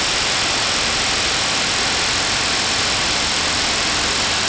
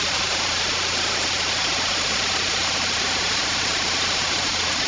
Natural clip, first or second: first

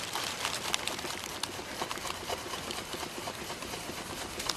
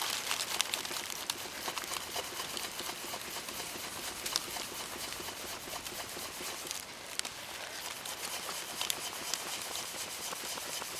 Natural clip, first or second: second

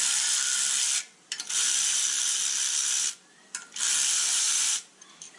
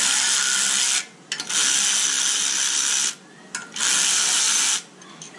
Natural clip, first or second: second